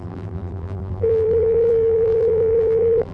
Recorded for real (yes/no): no